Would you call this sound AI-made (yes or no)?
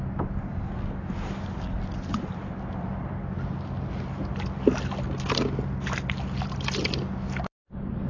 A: no